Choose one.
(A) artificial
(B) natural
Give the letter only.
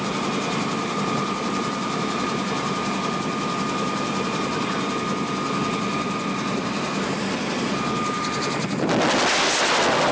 B